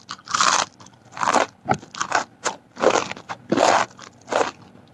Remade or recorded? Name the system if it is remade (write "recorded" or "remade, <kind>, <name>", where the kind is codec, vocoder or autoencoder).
recorded